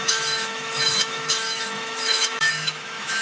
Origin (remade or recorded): remade